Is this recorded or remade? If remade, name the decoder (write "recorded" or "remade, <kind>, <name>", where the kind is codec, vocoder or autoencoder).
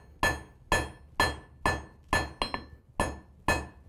recorded